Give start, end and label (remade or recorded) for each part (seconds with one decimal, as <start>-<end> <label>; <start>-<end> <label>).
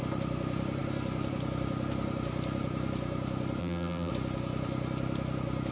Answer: 0.0-3.6 recorded; 3.6-4.1 remade; 4.1-5.7 recorded